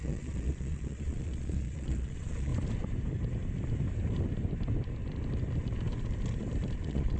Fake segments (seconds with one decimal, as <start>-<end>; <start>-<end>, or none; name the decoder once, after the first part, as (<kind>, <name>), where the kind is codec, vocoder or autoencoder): 0.0-2.5 (vocoder, Vocos); 6.8-7.2